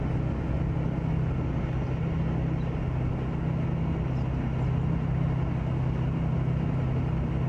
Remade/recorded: recorded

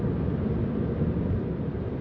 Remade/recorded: remade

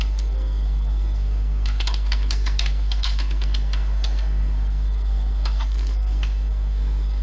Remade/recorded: remade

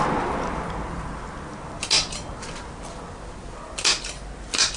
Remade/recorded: recorded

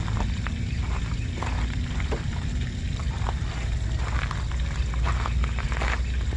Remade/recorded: recorded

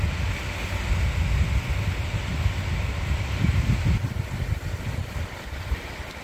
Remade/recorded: recorded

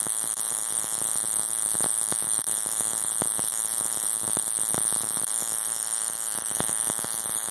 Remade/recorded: remade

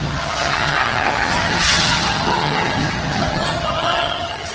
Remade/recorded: remade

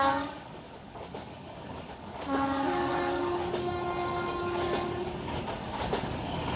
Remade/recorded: remade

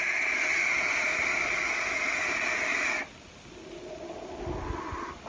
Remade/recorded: recorded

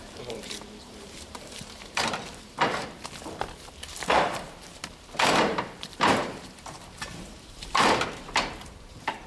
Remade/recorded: remade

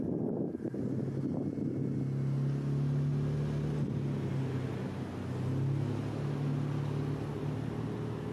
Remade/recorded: recorded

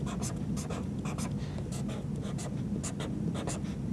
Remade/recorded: recorded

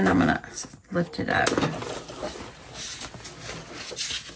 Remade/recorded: recorded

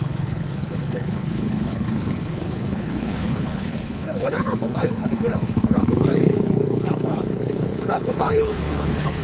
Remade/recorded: remade